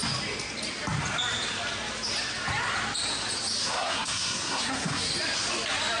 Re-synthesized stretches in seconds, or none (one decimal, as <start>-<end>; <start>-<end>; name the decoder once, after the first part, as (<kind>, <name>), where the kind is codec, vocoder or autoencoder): 3.6-5.1 (codec, SNAC)